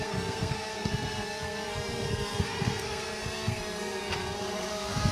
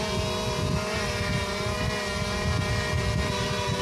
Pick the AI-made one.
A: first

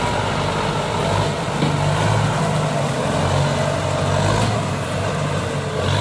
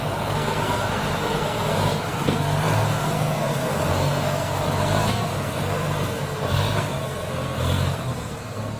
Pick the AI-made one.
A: second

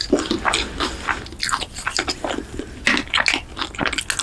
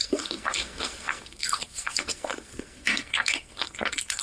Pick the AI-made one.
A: second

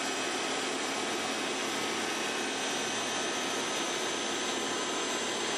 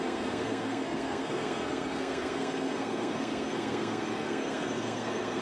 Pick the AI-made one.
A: second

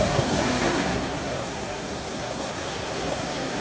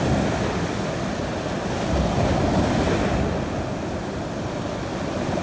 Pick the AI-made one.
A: first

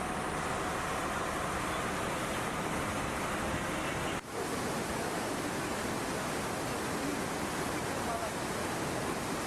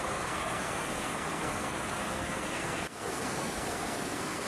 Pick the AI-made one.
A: second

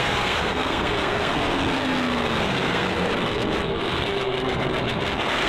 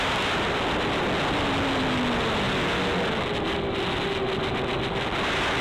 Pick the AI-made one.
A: first